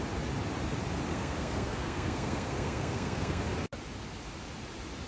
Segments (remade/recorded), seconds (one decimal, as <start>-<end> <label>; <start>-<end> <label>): 0.0-1.1 recorded; 1.1-3.4 remade; 3.4-5.1 recorded